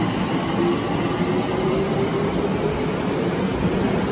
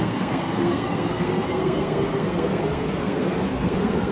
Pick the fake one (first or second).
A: second